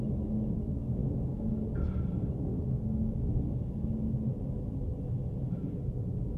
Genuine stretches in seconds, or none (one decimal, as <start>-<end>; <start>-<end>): 0.0-1.0; 1.5-6.4